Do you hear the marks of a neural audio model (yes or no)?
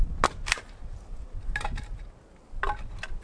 no